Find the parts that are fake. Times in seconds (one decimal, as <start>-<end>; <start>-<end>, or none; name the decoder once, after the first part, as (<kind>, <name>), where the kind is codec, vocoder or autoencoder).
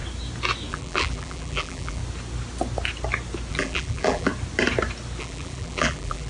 0.7-2.0 (vocoder, BigVGAN v2); 3.5-4.3; 5.2-6.3